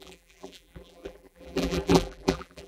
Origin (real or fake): fake